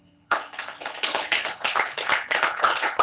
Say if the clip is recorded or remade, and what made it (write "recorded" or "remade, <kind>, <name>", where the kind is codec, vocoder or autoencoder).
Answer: remade, codec, HILCodec